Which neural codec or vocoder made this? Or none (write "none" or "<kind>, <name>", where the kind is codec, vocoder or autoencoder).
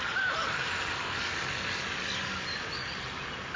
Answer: none